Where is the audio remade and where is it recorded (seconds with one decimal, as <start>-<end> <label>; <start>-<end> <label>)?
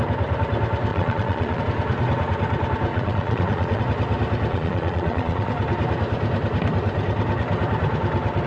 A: 0.0-0.9 recorded; 0.9-1.6 remade; 1.6-2.9 recorded; 2.9-3.8 remade; 3.8-4.5 recorded; 4.5-5.5 remade; 5.5-8.5 recorded